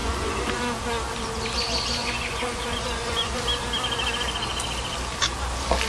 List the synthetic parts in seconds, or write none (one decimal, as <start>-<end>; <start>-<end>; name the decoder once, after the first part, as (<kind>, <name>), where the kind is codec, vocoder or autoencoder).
0.0-0.6 (vocoder, Vocos); 2.0-3.4